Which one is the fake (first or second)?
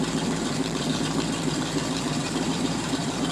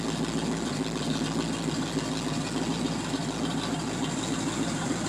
first